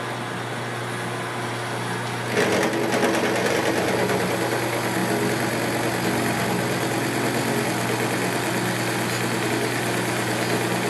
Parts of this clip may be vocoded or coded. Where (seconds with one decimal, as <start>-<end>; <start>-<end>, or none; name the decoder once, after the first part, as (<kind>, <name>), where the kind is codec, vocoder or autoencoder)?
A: none